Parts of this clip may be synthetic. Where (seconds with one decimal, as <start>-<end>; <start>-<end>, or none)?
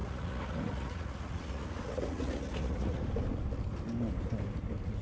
0.0-3.0